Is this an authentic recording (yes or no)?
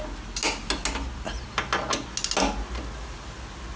yes